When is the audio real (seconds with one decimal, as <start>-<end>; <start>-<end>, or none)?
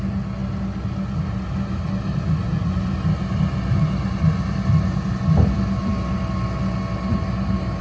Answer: 0.0-7.8